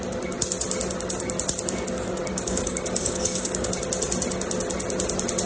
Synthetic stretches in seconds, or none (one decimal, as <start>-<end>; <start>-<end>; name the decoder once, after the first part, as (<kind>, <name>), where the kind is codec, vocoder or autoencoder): 2.3-3.7 (codec, DAC)